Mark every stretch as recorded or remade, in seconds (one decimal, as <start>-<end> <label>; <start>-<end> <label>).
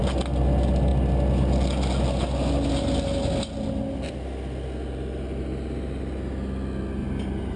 0.0-7.0 recorded; 7.0-7.6 remade